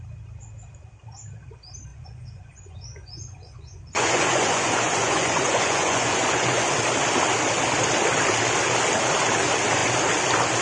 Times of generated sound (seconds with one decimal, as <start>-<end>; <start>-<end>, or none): 1.9-6.7